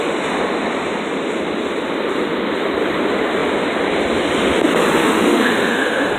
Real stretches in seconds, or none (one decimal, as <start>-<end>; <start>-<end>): 0.0-5.0